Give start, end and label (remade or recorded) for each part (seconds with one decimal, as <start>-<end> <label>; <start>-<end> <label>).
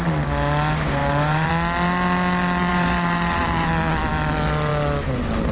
0.0-1.0 recorded; 1.0-1.5 remade; 1.5-2.7 recorded; 2.7-3.7 remade; 3.7-5.5 recorded